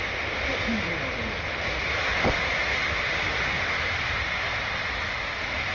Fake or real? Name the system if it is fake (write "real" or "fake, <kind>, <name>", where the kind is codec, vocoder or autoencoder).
real